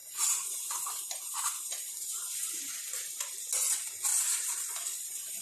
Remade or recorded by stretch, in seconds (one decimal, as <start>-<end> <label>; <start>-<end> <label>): 0.0-2.6 remade; 2.6-4.1 recorded; 4.1-5.4 remade